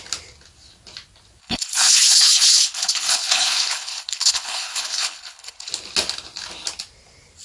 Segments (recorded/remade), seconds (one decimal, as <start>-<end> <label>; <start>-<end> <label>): 0.0-1.4 recorded; 1.4-5.7 remade; 5.7-7.4 recorded